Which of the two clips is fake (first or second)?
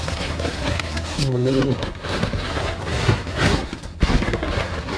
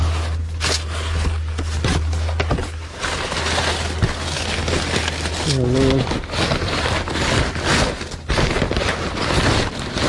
first